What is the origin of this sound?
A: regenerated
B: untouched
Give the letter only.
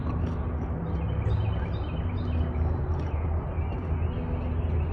B